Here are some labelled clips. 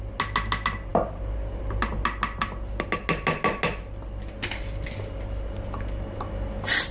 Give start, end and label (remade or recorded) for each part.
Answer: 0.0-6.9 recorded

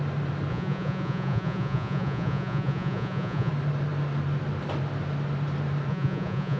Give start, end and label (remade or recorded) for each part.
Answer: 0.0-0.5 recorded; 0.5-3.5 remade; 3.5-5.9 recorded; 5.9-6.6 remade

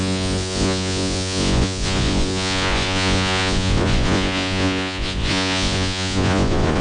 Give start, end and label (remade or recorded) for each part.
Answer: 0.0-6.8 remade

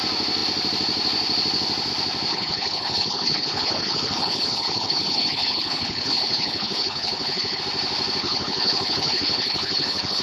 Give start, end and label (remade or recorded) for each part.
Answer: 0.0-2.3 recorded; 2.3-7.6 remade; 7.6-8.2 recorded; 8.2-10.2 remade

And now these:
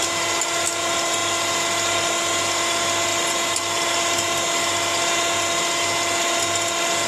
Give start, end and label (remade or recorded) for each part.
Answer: 0.0-7.1 recorded

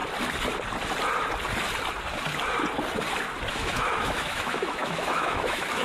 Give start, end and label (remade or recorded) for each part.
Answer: 0.0-3.5 recorded; 3.5-5.8 remade

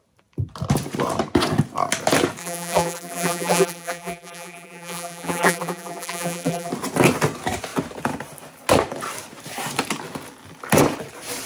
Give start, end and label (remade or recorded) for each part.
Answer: 0.0-2.4 recorded; 2.4-6.7 remade; 6.7-11.5 recorded

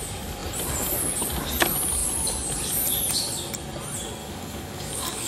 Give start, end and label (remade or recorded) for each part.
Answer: 0.0-4.2 recorded; 4.2-5.3 remade